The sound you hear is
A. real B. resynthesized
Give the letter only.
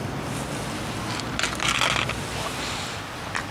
A